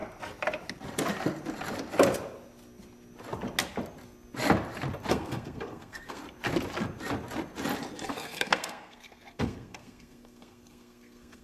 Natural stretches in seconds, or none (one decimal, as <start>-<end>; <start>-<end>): 0.0-5.1; 6.2-8.1

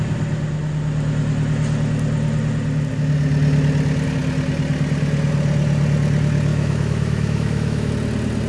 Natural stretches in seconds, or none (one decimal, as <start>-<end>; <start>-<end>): 0.0-6.5; 7.9-8.5